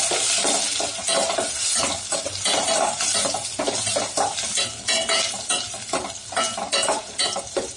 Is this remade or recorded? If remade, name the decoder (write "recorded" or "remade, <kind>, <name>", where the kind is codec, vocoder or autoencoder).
recorded